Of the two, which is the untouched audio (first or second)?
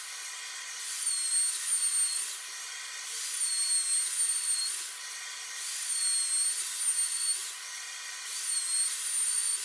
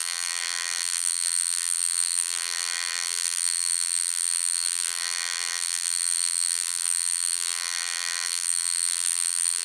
first